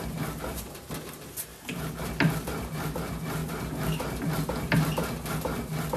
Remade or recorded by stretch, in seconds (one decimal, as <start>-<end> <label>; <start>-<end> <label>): 0.0-6.0 recorded